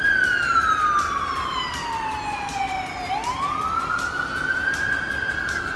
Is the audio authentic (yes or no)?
yes